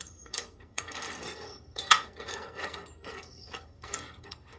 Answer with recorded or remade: remade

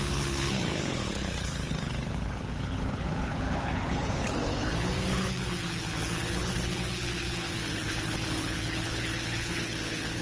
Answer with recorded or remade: remade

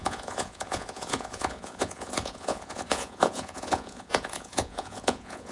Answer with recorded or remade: remade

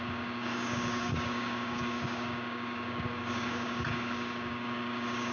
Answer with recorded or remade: remade